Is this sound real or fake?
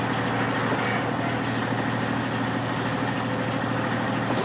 real